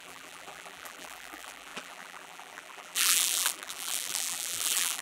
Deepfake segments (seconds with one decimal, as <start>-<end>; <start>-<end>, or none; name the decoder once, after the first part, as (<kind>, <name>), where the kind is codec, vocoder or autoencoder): 0.0-5.0 (vocoder, BigVGAN v2)